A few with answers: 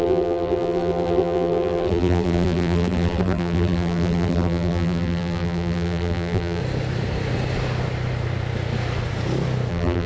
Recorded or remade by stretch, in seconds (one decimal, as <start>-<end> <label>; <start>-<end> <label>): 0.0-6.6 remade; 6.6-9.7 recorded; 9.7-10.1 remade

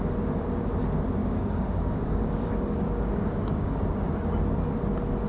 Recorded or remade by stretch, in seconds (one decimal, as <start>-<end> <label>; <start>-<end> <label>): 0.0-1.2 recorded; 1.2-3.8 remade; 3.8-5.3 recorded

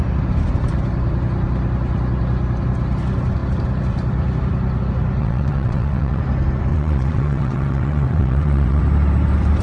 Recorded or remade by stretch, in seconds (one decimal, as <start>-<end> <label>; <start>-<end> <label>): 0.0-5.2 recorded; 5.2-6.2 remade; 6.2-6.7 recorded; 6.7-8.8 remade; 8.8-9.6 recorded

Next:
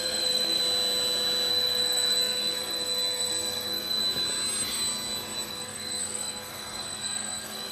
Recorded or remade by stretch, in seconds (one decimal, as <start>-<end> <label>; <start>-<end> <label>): 0.0-0.6 remade; 0.6-1.5 recorded; 1.5-4.0 remade; 4.0-5.5 recorded; 5.5-7.7 remade

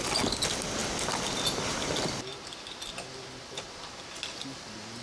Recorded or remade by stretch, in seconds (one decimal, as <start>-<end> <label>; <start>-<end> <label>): 0.0-5.0 recorded

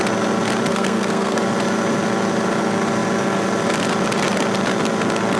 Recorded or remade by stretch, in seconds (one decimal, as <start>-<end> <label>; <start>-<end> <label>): 0.0-0.7 recorded; 0.7-1.4 remade; 1.4-5.4 recorded